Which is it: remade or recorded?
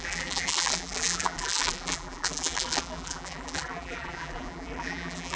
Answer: remade